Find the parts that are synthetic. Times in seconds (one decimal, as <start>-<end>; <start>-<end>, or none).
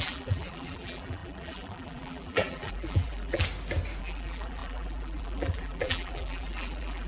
0.0-3.4; 4.0-7.1